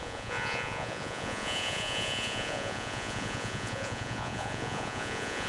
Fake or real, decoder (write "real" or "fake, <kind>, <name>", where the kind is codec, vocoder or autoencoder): fake, vocoder, Vocos